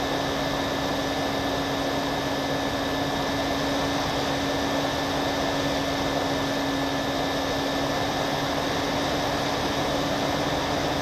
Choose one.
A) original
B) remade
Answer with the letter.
A